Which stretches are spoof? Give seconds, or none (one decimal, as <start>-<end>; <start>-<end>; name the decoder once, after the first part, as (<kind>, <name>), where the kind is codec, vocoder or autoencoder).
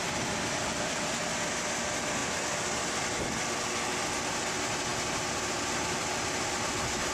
none